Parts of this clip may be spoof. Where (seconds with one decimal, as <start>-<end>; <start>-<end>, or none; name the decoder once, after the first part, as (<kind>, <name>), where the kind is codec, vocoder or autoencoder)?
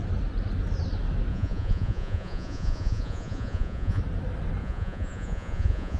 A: 1.3-4.0 (vocoder, Vocos); 4.6-6.0